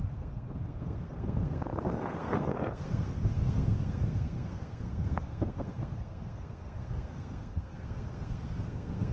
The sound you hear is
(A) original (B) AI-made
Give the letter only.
B